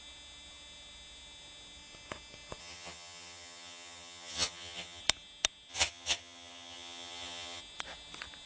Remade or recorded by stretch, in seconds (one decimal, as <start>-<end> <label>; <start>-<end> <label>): 0.0-2.6 recorded; 2.6-5.0 remade; 5.0-5.7 recorded; 5.7-7.6 remade; 7.6-8.5 recorded